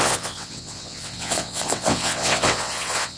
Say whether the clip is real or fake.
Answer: fake